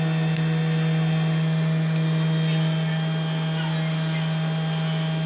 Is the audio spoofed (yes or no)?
no